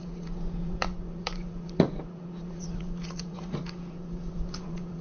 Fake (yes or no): yes